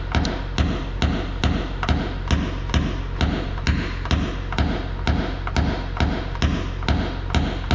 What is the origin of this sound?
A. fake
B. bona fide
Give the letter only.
B